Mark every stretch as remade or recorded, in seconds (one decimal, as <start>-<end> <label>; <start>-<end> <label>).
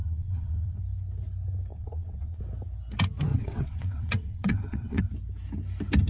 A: 0.0-0.8 remade; 0.8-1.7 recorded; 1.7-2.4 remade; 2.4-3.3 recorded; 3.3-5.0 remade; 5.0-6.1 recorded